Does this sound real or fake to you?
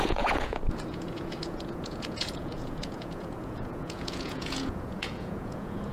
fake